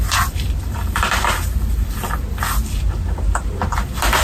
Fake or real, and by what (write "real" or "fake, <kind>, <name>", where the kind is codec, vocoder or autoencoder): fake, vocoder, BigVGAN v2